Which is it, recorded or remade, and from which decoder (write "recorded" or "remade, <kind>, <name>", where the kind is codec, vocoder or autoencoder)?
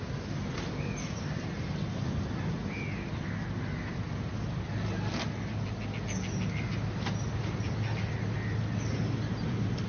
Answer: recorded